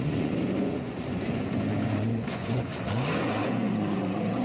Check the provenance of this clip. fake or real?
fake